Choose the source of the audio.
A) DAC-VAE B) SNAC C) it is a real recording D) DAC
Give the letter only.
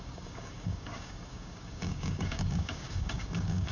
D